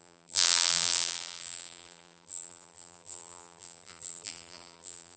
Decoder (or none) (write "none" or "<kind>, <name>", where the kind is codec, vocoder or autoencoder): vocoder, BigVGAN v2